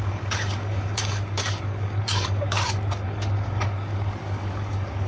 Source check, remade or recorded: remade